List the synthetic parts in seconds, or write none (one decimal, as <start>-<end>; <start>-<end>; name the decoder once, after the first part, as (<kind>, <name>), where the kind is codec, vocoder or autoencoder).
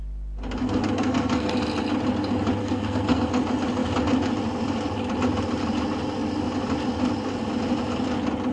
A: 0.6-1.5 (codec, SNAC); 2.6-3.3